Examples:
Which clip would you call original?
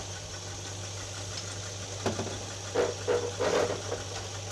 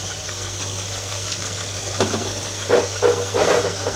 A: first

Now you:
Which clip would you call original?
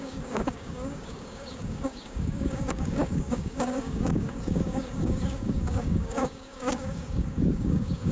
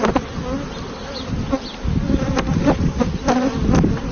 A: second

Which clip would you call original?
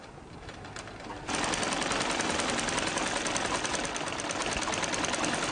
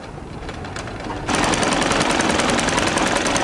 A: first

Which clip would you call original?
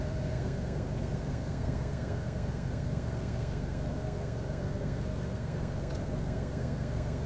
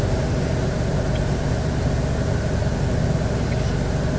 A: second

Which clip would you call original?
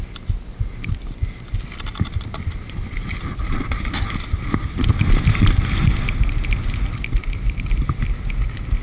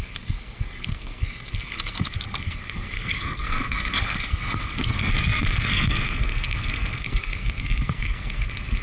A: first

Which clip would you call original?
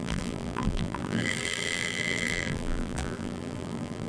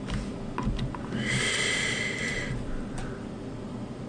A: second